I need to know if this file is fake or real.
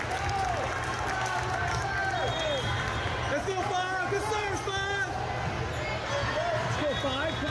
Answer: real